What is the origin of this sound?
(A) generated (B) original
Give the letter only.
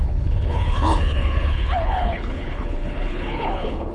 A